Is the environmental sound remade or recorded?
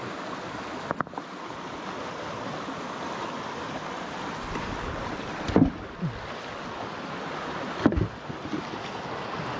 recorded